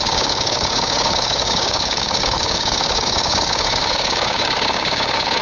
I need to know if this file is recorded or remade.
remade